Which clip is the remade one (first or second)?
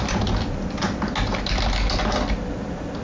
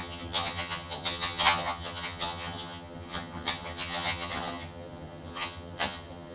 second